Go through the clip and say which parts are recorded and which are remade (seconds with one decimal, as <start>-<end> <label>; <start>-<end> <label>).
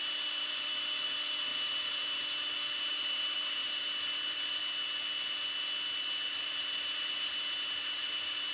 0.0-4.6 remade; 4.6-6.3 recorded; 6.3-8.5 remade